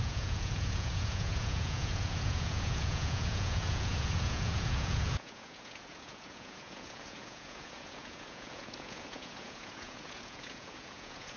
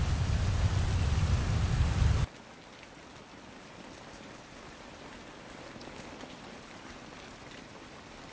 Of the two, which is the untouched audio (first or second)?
second